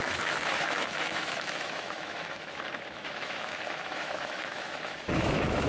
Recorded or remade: remade